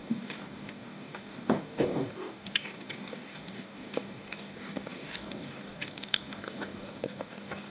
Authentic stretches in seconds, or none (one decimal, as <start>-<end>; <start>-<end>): none